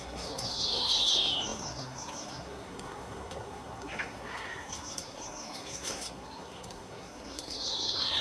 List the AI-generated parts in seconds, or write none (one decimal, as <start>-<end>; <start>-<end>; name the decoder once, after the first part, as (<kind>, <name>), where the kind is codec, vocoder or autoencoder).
0.0-8.2 (codec, SNAC)